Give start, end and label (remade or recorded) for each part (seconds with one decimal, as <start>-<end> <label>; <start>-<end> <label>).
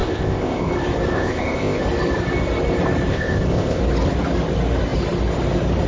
0.0-0.7 remade; 0.7-1.1 recorded; 1.1-1.8 remade; 1.8-3.1 recorded; 3.1-3.8 remade; 3.8-5.9 recorded